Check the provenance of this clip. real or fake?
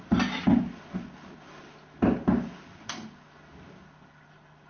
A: real